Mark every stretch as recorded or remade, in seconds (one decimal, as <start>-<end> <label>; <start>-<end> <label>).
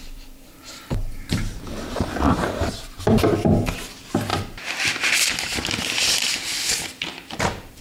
0.0-4.3 remade; 4.3-6.7 recorded; 6.7-7.8 remade